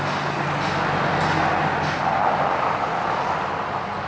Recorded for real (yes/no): yes